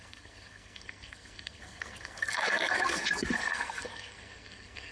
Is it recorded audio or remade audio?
remade